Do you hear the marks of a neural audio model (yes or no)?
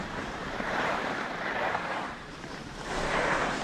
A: yes